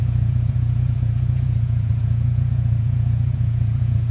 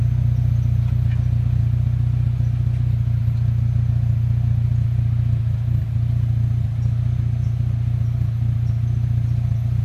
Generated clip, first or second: first